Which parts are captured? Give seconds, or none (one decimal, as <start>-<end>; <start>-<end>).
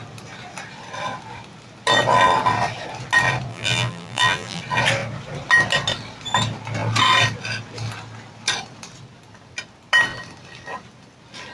0.0-3.5; 4.6-11.5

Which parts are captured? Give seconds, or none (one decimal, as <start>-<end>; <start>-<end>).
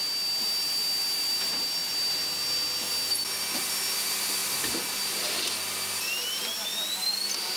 0.0-7.6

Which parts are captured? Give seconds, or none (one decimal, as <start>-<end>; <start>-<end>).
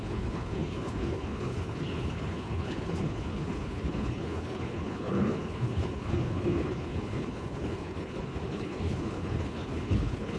none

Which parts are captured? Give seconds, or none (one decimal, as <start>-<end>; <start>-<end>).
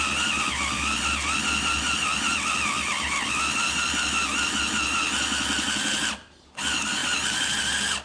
0.0-8.0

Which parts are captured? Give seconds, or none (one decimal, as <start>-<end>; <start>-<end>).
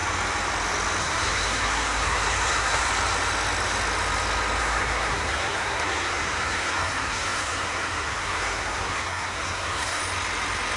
0.0-1.0; 2.9-4.6; 10.0-10.8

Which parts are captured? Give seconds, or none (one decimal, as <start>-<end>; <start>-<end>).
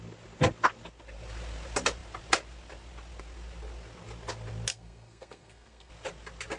0.0-4.7; 5.9-6.6